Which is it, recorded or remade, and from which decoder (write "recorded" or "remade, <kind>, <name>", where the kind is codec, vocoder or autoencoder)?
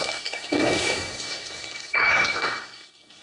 remade, codec, SNAC